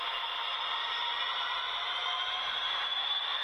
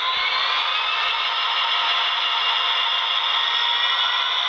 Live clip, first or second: second